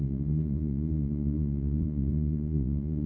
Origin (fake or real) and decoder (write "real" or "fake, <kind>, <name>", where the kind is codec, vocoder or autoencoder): fake, vocoder, Vocos